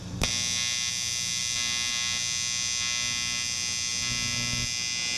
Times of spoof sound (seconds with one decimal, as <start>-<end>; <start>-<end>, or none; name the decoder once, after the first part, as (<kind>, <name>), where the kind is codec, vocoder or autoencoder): none